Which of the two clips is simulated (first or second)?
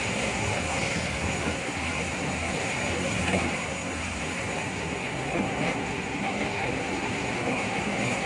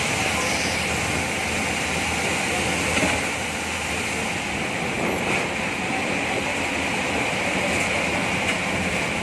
first